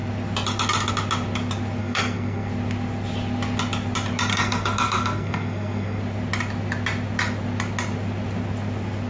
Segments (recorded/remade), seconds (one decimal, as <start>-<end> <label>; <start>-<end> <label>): 0.0-1.8 recorded; 1.8-2.5 remade; 2.5-4.3 recorded; 4.3-6.0 remade; 6.0-9.1 recorded